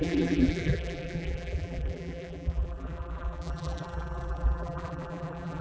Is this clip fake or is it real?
fake